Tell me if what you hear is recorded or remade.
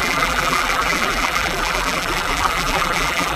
remade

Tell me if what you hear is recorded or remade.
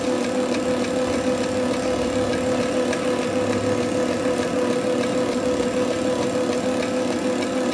recorded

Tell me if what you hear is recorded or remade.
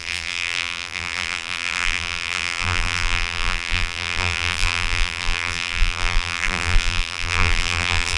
remade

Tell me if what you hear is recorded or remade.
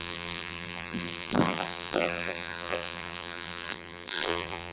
remade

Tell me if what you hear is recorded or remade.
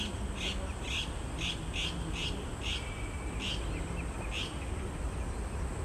recorded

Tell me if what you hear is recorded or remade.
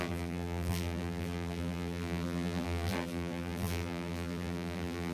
remade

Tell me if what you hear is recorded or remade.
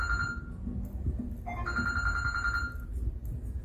recorded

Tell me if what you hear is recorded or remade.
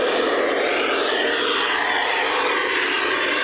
remade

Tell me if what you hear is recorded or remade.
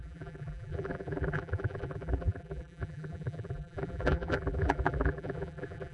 remade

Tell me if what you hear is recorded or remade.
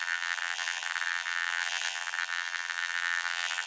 remade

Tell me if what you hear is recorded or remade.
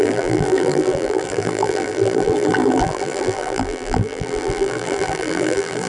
remade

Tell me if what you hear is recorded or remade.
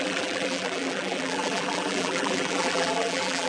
remade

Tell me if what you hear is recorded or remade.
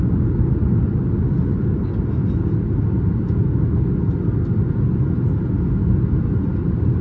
recorded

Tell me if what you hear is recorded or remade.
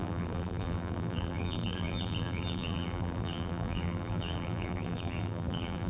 remade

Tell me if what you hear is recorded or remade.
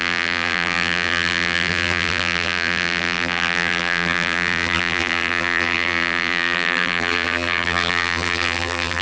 remade